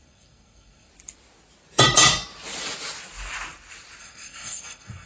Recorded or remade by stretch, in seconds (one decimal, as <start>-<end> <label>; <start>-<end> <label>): 0.0-0.9 remade; 0.9-4.0 recorded; 4.0-5.1 remade